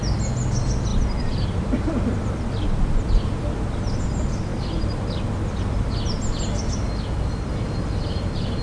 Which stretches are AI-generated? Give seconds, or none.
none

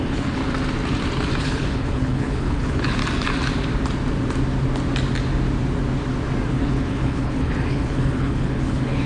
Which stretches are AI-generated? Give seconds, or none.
0.0-0.4 (codec, HILCodec); 1.4-3.0; 6.5-9.1

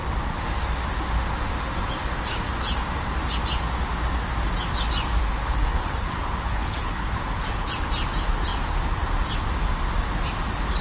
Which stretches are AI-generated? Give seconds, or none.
5.2-7.7 (codec, HILCodec)